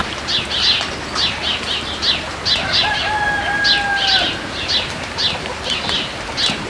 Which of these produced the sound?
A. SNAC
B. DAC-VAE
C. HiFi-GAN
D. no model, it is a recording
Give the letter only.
D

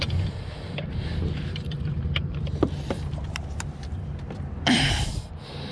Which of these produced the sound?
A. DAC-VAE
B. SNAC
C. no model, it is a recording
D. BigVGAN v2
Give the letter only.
D